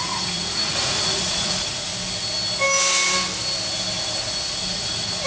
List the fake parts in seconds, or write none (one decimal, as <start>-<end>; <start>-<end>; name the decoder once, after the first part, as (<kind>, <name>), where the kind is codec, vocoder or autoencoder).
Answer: 0.0-1.9 (vocoder, Vocos); 4.6-5.3